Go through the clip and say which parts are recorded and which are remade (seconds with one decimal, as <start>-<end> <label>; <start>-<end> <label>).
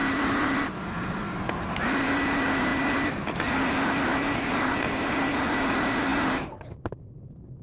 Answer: 0.0-7.6 recorded